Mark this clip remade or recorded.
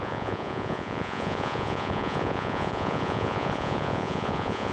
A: remade